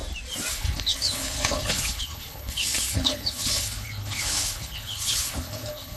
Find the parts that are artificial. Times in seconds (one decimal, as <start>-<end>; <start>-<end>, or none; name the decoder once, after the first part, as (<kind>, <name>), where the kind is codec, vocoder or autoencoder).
0.5-6.0 (codec, HILCodec)